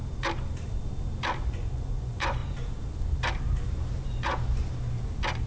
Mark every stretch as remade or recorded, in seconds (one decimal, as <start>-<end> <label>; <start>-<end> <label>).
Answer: 0.0-1.5 recorded; 1.5-2.4 remade; 2.4-5.5 recorded